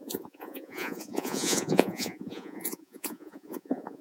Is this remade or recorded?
remade